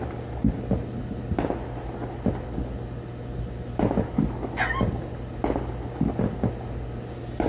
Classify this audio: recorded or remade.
recorded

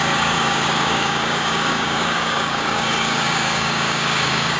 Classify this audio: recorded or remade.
remade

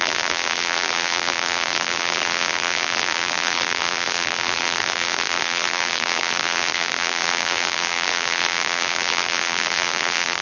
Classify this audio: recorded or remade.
remade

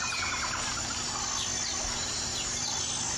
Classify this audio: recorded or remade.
recorded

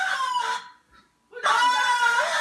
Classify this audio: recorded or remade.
recorded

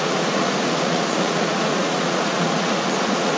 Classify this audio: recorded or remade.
remade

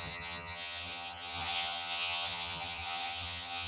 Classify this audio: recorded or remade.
remade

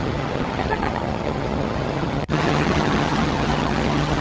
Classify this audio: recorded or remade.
remade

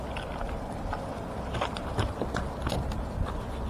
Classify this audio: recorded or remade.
recorded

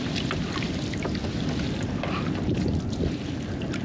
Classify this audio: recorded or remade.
recorded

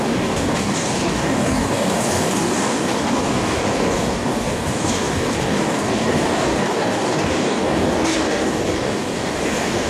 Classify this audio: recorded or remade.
remade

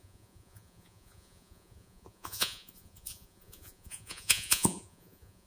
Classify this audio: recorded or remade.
remade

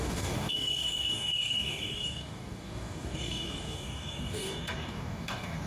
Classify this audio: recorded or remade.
remade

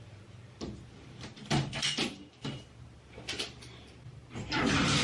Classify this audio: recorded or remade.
remade